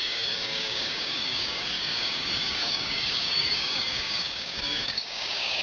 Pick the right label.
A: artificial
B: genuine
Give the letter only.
A